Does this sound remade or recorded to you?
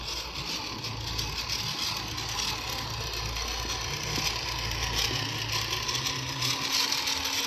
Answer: recorded